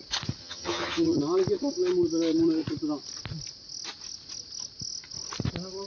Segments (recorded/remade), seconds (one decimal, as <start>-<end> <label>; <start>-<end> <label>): 0.0-0.4 recorded; 0.4-1.2 remade; 1.2-5.9 recorded